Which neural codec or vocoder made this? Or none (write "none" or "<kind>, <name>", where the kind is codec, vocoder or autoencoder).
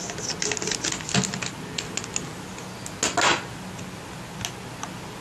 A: none